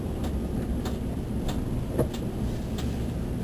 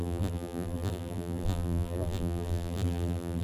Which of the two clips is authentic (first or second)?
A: first